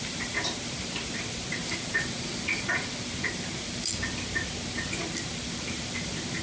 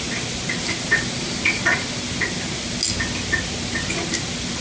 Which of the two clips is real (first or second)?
second